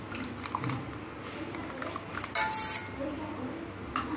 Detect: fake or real real